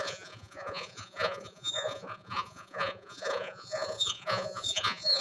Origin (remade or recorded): remade